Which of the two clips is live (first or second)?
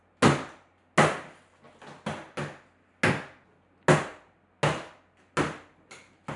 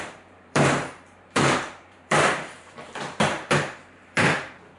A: first